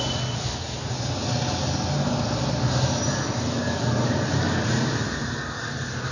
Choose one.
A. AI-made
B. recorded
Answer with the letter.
B